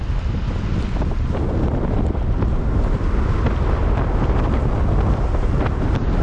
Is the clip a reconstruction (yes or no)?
no